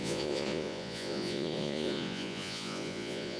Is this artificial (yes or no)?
yes